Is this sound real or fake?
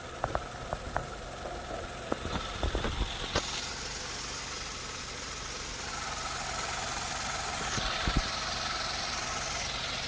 real